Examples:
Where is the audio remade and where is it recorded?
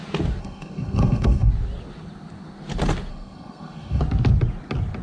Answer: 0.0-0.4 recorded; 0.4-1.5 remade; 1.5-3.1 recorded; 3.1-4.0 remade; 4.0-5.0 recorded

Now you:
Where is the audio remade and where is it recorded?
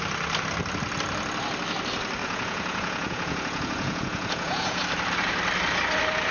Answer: 0.0-2.2 recorded; 2.2-4.8 remade; 4.8-6.3 recorded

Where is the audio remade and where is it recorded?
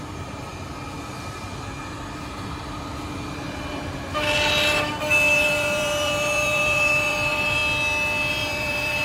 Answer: 0.0-0.5 remade; 0.5-5.3 recorded; 5.3-7.6 remade; 7.6-8.3 recorded; 8.3-9.0 remade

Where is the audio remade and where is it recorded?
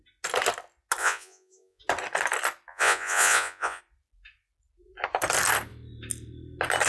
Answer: 0.0-1.0 recorded; 1.0-1.8 remade; 1.8-2.7 recorded; 2.7-3.8 remade; 3.8-6.9 recorded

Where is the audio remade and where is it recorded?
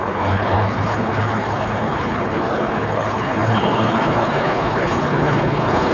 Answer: 0.0-5.9 remade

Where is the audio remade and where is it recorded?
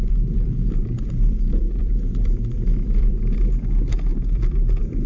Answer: 0.0-3.1 remade; 3.1-4.1 recorded; 4.1-5.1 remade